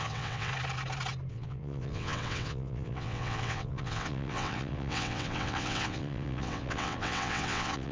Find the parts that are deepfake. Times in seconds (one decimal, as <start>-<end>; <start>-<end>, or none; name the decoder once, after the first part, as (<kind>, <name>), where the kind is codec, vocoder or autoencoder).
0.0-0.5 (vocoder, WaveNeXt); 1.3-7.9